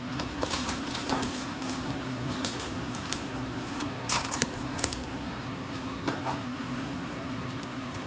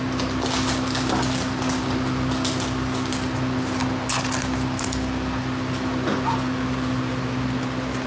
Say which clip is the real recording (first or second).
second